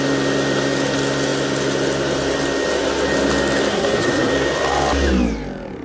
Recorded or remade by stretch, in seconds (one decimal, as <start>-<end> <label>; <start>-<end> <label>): 0.0-3.7 recorded; 3.7-4.3 remade; 4.3-5.8 recorded